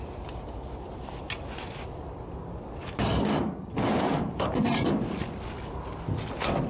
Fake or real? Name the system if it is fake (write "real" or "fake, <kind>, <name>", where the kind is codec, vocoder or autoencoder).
real